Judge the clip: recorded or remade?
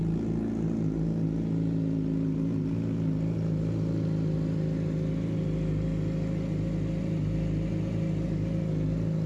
recorded